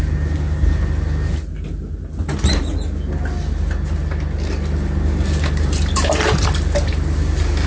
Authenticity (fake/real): real